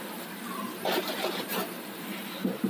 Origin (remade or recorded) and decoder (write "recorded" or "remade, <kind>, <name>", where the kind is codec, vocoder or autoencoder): remade, vocoder, BigVGAN v2